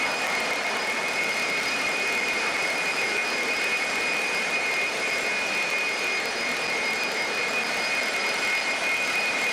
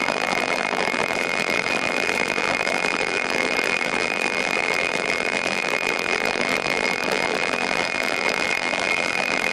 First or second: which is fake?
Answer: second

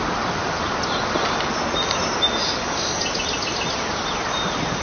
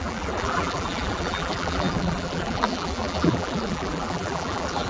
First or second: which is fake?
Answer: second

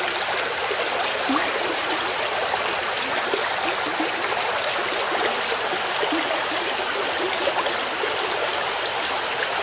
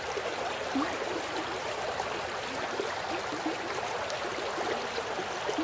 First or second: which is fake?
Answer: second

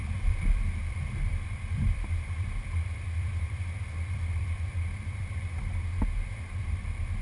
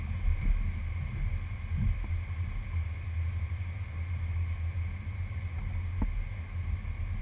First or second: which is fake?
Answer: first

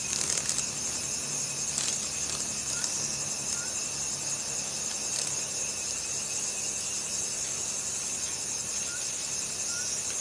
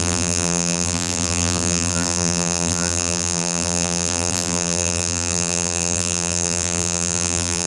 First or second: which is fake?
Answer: second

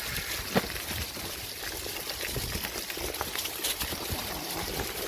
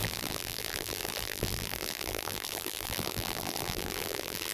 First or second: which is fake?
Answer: second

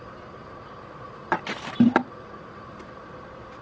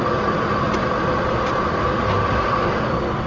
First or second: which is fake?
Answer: first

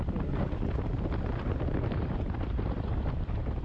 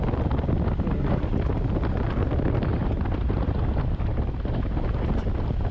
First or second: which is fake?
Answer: first